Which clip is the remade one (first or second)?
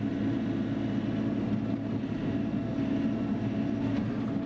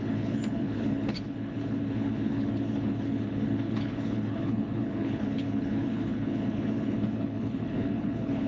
second